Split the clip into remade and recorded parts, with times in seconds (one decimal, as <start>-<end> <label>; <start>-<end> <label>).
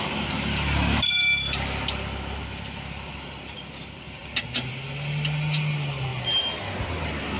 0.0-7.4 recorded